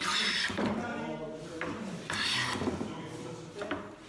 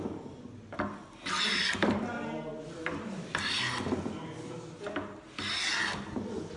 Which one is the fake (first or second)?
first